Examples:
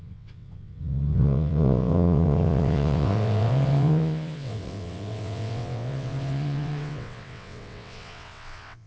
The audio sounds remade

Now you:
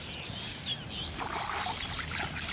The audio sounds recorded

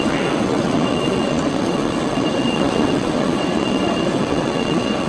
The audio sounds remade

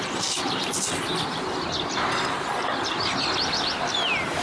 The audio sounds recorded